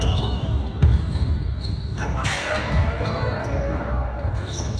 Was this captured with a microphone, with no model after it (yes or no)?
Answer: no